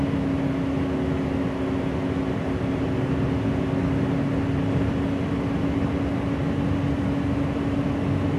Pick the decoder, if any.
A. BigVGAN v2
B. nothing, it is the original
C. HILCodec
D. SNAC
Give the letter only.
B